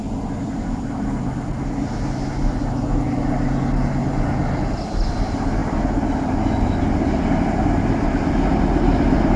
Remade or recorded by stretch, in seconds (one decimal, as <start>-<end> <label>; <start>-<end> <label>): 0.0-9.4 recorded